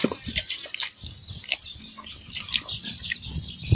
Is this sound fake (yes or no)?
no